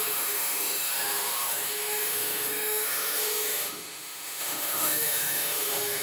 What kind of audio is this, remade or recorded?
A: remade